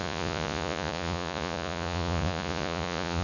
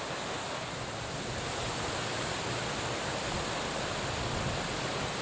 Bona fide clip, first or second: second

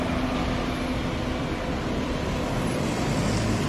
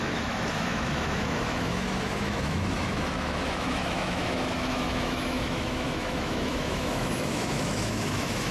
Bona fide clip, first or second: first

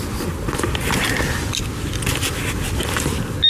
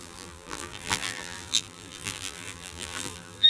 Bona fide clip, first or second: first